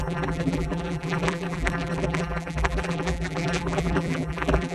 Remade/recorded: remade